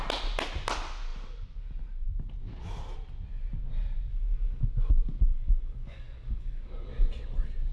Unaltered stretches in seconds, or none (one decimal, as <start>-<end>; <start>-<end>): 0.0-4.1; 4.6-5.3; 6.9-7.7